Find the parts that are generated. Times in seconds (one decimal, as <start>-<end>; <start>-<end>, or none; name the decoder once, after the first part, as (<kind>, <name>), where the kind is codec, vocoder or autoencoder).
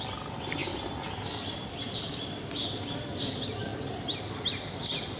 none